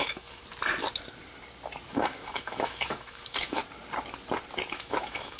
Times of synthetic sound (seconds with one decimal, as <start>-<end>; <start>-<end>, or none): 0.0-0.4; 1.9-3.6; 4.7-5.4